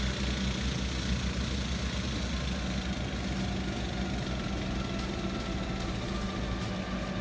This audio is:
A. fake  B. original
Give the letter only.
B